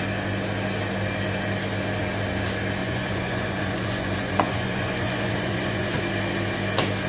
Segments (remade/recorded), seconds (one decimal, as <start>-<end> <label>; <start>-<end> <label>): 0.0-2.8 recorded; 2.8-6.0 remade; 6.0-7.1 recorded